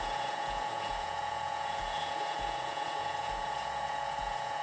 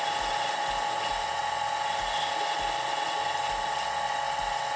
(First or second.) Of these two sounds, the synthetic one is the first